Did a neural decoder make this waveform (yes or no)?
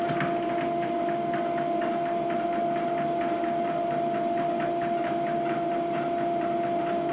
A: no